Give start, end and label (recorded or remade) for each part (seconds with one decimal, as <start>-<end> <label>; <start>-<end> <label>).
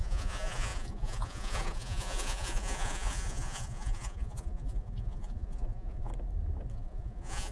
0.0-6.1 remade; 6.1-6.7 recorded; 6.7-7.5 remade